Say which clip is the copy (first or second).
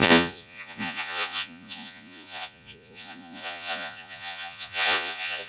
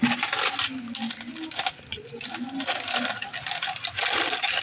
first